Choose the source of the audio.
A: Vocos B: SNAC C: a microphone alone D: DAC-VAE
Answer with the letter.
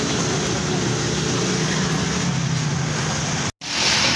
C